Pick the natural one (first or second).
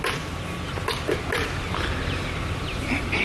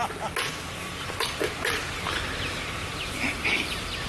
first